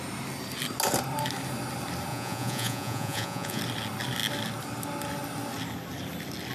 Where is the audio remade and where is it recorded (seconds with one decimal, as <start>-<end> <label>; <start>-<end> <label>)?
0.0-2.1 recorded; 2.1-3.6 remade; 3.6-6.5 recorded